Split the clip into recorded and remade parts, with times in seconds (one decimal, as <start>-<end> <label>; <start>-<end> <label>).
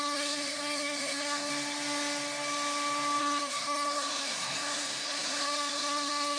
0.0-1.5 remade; 1.5-3.2 recorded; 3.2-6.4 remade